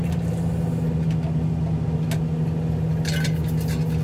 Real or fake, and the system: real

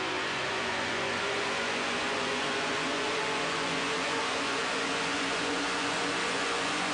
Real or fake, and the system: fake, vocoder, Vocos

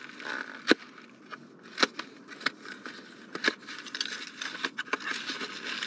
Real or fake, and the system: real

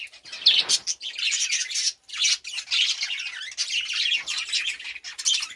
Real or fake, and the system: real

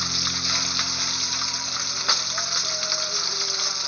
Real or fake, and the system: fake, vocoder, BigVGAN v2